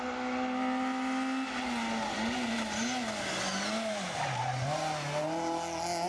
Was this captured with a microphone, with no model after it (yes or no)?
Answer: yes